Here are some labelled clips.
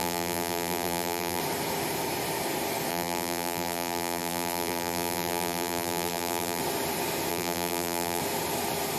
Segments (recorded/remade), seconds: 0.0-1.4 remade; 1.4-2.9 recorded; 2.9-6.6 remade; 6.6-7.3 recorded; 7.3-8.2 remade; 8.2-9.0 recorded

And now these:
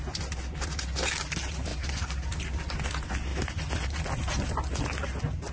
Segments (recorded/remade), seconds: 0.0-1.7 recorded; 1.7-2.4 remade; 2.4-3.3 recorded; 3.3-4.0 remade; 4.0-5.5 recorded